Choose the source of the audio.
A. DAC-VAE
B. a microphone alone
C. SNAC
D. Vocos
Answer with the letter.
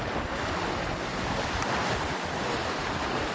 B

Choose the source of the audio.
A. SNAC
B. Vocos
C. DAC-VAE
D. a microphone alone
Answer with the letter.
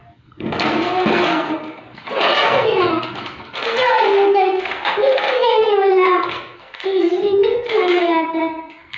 A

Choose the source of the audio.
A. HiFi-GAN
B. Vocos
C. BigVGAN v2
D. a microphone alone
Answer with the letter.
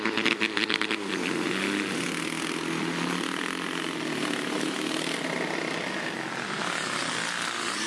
D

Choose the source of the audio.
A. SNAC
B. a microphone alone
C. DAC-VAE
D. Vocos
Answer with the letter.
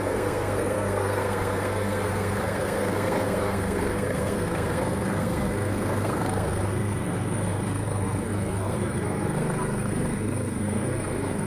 A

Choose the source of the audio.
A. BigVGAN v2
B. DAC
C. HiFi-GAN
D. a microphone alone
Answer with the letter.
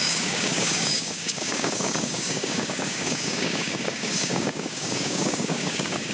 B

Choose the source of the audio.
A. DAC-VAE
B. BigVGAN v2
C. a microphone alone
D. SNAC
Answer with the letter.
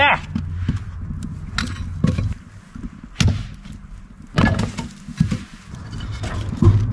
C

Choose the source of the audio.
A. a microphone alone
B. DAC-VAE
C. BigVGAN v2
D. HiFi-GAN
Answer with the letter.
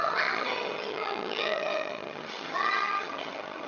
D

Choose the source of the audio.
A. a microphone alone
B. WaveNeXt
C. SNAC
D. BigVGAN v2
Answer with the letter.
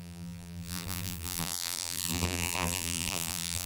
D